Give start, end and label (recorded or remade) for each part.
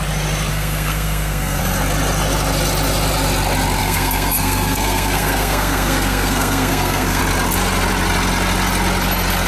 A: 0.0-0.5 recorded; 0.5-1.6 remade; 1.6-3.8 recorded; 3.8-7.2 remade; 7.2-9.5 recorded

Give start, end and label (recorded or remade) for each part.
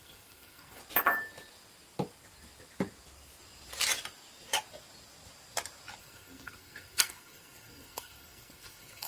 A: 0.0-0.8 remade; 0.8-6.0 recorded; 6.0-9.1 remade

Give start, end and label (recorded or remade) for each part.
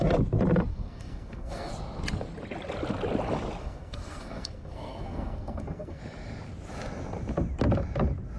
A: 0.0-0.7 recorded; 0.7-1.7 remade; 1.7-3.6 recorded; 3.6-6.0 remade; 6.0-8.4 recorded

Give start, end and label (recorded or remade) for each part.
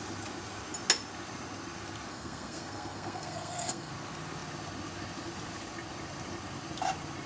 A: 0.0-2.1 recorded; 2.1-3.9 remade; 3.9-7.3 recorded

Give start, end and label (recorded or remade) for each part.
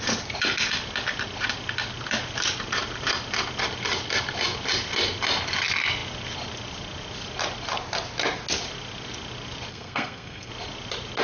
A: 0.0-9.7 recorded; 9.7-10.5 remade; 10.5-11.2 recorded